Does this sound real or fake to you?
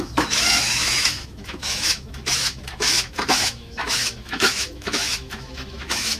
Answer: fake